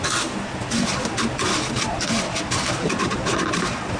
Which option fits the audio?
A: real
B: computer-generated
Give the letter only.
B